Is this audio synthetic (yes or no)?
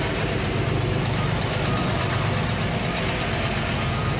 yes